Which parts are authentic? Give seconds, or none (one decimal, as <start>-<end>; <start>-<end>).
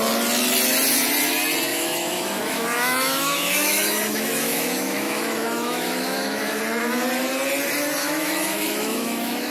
0.0-1.7; 6.6-8.0